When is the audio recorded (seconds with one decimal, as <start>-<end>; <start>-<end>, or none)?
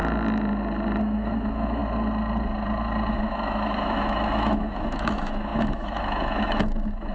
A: 0.0-1.0; 1.8-3.1